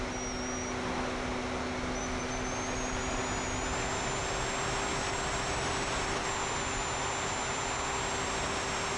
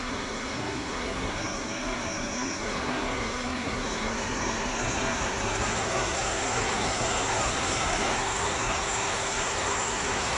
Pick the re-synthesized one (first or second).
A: second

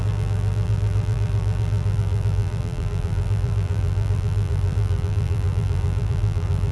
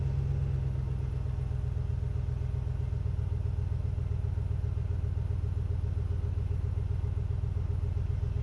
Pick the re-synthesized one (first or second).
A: first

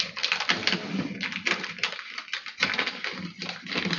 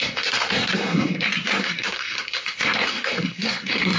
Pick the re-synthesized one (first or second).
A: second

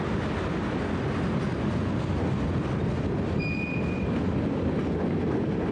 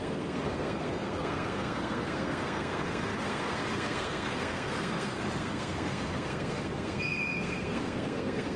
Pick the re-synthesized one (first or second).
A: second